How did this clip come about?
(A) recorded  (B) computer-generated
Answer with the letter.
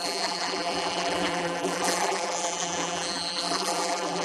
B